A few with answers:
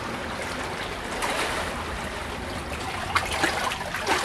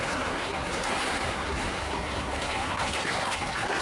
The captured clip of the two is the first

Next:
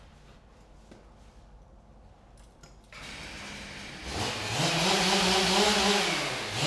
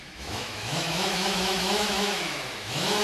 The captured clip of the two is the first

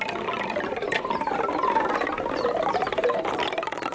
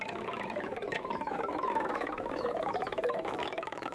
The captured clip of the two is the first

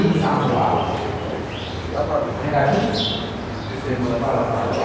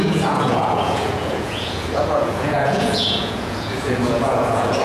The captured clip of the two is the first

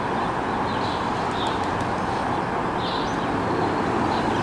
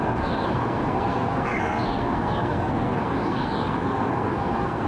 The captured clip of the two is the first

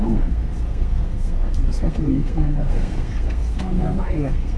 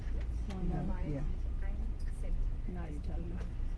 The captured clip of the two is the second